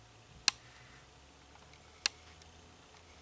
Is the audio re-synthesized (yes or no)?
no